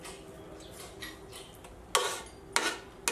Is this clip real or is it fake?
real